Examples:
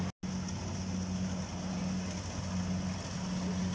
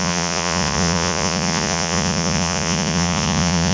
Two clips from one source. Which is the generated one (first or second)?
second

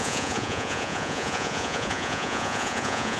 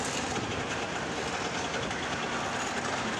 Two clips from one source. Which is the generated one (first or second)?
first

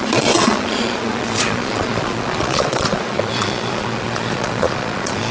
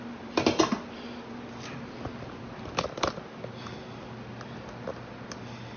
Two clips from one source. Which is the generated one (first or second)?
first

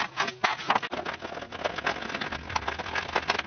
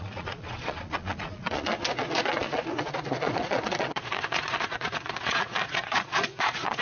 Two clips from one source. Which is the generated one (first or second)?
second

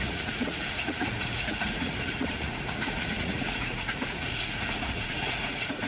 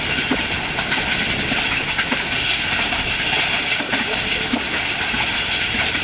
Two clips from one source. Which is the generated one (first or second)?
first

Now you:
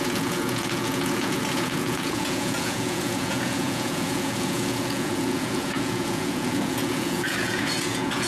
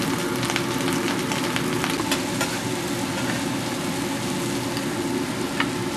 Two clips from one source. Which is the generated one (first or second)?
first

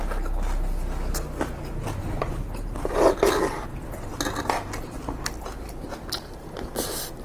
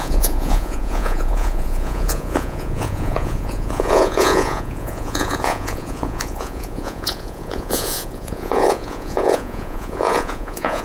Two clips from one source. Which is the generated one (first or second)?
second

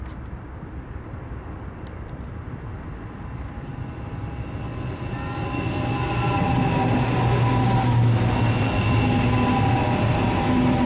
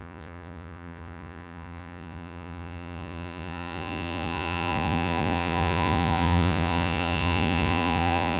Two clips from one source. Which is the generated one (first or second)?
second